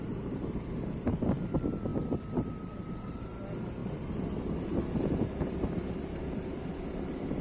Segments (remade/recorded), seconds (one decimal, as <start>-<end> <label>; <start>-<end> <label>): 0.0-7.4 recorded